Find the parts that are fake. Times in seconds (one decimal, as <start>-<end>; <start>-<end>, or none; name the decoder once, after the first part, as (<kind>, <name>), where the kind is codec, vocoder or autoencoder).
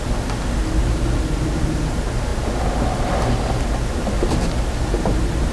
none